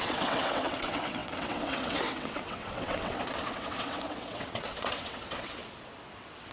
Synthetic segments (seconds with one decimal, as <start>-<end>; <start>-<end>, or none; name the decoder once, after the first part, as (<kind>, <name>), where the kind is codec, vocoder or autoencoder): 0.0-5.6 (vocoder, WaveNeXt); 6.1-6.5